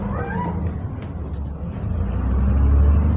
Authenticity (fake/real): real